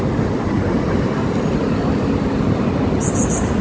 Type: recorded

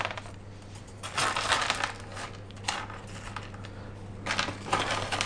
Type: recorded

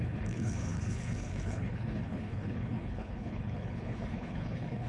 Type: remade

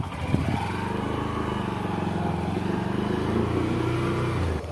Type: recorded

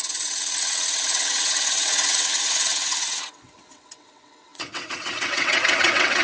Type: remade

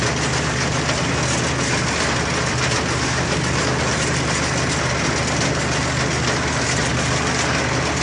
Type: recorded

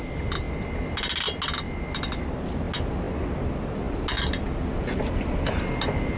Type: recorded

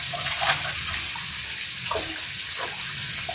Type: recorded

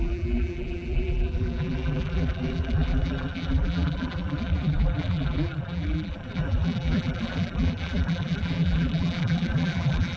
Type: remade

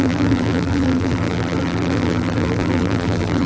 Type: remade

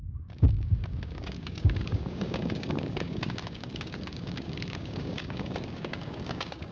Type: remade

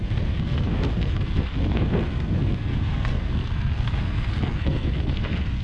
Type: remade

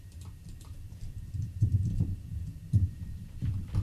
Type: remade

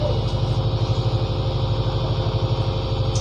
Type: recorded